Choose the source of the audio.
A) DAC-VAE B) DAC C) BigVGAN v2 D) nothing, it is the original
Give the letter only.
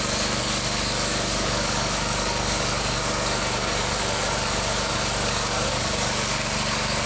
B